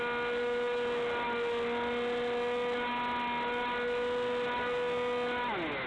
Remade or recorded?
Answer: recorded